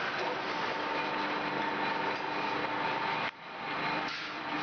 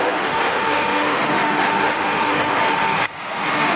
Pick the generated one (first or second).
second